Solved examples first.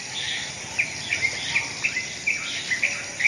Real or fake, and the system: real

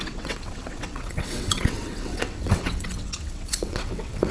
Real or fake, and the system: fake, vocoder, WaveNeXt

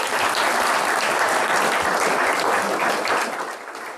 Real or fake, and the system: real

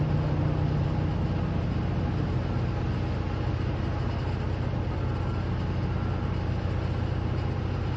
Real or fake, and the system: real